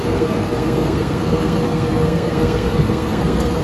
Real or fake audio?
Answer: fake